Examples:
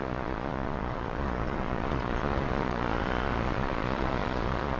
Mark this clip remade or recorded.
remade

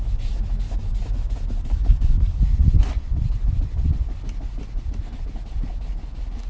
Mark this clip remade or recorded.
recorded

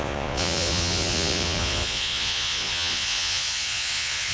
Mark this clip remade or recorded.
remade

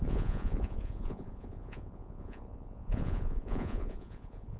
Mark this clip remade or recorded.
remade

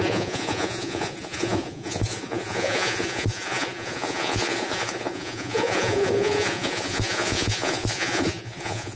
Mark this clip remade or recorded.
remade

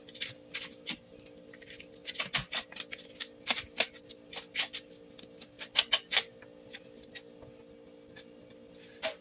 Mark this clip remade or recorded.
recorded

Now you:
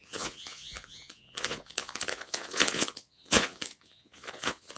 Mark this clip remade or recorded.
remade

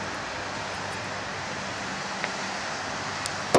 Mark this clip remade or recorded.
recorded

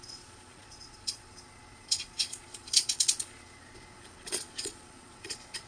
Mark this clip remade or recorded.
remade